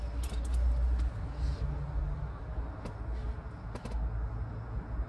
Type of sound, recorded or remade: recorded